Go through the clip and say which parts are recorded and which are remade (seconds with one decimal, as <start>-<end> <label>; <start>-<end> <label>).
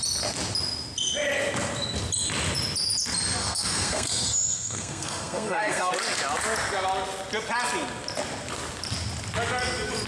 0.0-3.4 recorded; 3.4-5.9 remade; 5.9-10.1 recorded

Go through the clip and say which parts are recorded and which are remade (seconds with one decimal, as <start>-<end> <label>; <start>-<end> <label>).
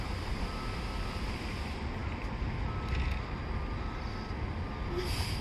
0.0-5.4 recorded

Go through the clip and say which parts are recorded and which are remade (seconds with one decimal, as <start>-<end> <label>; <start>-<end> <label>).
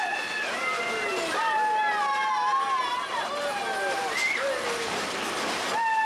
0.0-6.0 recorded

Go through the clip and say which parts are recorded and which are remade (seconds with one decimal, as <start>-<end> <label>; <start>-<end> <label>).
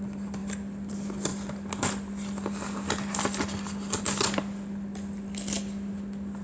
0.0-6.4 recorded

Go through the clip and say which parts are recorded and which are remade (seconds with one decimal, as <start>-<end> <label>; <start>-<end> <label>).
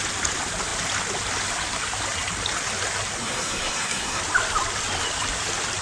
0.0-3.2 recorded; 3.2-4.2 remade; 4.2-5.8 recorded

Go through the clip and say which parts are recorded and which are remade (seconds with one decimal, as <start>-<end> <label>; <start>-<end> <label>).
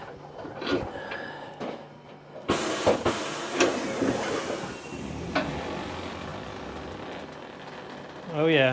0.0-0.4 recorded; 0.4-0.9 remade; 0.9-8.7 recorded